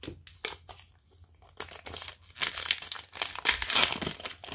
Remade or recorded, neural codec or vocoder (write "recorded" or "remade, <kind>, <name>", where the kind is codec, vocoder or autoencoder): recorded